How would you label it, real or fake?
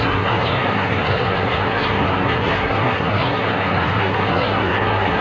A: fake